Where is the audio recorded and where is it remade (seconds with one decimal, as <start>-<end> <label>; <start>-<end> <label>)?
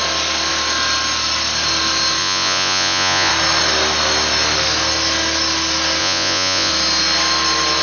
0.0-2.2 recorded; 2.2-3.3 remade; 3.3-6.0 recorded; 6.0-6.7 remade; 6.7-7.8 recorded